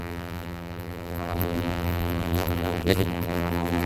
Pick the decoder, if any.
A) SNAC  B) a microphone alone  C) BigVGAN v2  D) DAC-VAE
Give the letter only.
C